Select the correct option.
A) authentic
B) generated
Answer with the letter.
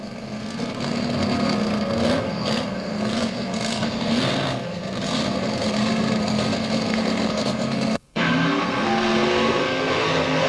B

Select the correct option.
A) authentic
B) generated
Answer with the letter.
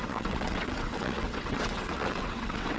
B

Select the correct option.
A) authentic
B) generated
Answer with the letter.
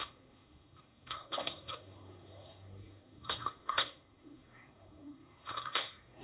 B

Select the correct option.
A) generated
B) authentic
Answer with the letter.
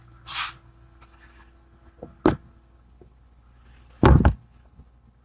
B